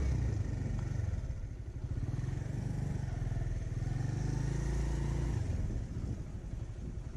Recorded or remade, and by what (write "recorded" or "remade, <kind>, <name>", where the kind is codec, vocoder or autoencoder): recorded